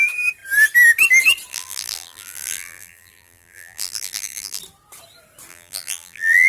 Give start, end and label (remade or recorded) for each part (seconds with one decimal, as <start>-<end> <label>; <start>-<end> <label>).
0.0-1.5 recorded; 1.5-4.6 remade; 4.6-5.5 recorded; 5.5-6.5 remade